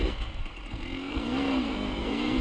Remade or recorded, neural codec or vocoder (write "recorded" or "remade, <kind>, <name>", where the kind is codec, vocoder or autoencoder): remade, codec, SNAC